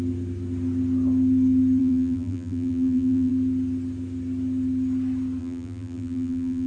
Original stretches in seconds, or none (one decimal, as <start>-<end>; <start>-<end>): 0.0-1.8; 3.3-5.4